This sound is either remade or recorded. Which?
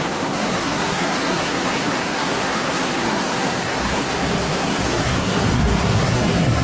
remade